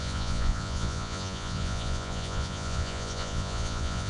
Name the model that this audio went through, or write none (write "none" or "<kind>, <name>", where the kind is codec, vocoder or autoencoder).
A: vocoder, Vocos